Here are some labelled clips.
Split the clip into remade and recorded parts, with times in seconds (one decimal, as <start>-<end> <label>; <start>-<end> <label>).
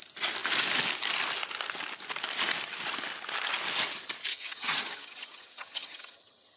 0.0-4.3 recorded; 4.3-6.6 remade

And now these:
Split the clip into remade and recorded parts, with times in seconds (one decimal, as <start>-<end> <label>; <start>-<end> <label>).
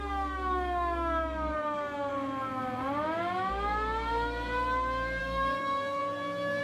0.0-2.1 remade; 2.1-5.2 recorded; 5.2-6.0 remade; 6.0-6.6 recorded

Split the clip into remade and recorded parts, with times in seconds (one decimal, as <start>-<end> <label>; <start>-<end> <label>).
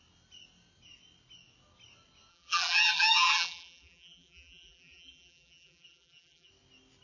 0.0-2.3 recorded; 2.3-6.5 remade; 6.5-7.0 recorded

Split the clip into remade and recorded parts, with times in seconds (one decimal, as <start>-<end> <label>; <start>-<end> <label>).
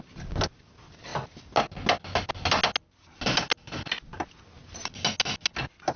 0.0-6.0 recorded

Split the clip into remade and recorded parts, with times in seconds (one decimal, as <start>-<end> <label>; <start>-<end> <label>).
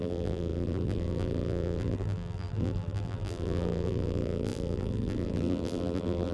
0.0-6.3 remade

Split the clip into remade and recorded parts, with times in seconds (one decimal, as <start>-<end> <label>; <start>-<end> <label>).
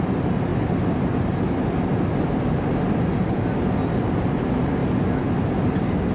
0.0-6.1 recorded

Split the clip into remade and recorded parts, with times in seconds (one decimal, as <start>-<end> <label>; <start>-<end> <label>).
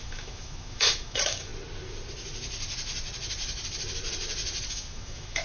0.0-1.5 remade; 1.5-4.7 recorded; 4.7-5.4 remade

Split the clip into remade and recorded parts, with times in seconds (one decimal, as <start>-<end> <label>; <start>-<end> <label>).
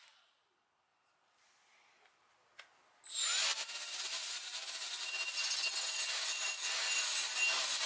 0.0-7.9 recorded